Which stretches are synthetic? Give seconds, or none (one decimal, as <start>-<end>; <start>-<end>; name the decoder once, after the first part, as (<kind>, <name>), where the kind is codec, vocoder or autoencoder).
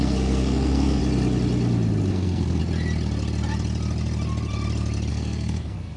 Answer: 0.0-1.0 (codec, SNAC); 2.1-2.6; 5.1-6.0